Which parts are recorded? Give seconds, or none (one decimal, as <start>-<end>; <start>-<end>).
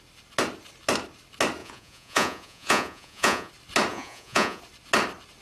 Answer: 0.0-1.6; 3.5-3.9; 4.6-5.4